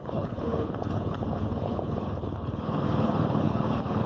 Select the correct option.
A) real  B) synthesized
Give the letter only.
B